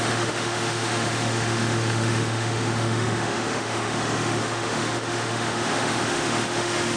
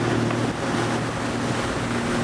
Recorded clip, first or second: second